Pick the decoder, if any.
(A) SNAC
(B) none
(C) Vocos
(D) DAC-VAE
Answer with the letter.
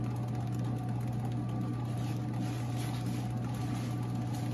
B